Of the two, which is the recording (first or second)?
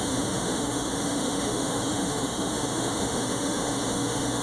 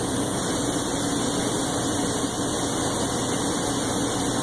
second